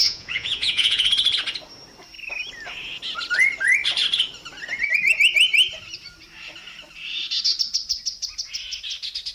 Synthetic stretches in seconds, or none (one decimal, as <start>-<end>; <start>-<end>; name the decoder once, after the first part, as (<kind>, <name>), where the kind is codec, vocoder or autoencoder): 0.0-1.1 (vocoder, Vocos)